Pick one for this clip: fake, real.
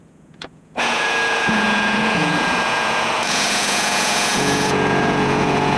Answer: fake